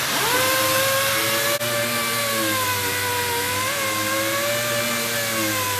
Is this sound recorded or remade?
recorded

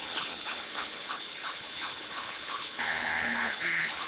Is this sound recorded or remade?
remade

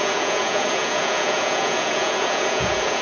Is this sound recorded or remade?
remade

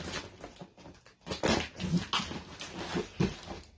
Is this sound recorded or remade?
recorded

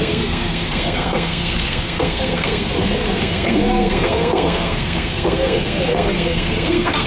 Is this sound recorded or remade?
remade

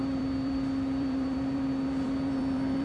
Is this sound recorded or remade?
remade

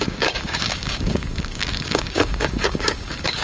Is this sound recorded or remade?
remade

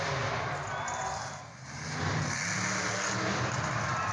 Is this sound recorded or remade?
recorded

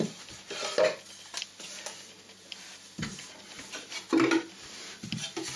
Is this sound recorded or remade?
recorded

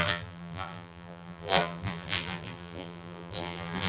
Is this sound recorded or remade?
remade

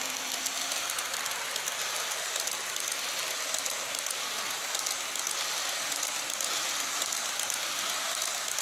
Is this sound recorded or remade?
recorded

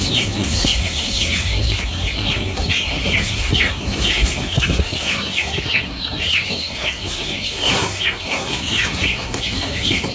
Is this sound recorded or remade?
remade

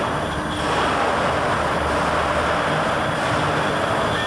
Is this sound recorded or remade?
recorded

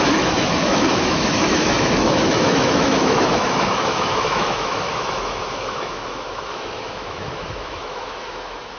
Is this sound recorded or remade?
remade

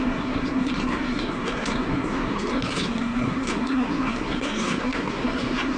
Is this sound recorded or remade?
remade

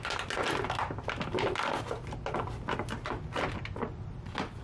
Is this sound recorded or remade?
recorded